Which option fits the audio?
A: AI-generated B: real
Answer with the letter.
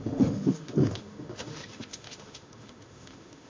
A